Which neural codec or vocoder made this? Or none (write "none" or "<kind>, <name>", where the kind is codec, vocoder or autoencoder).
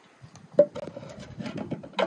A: none